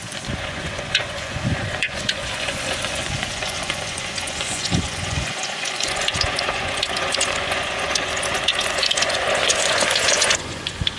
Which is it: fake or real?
fake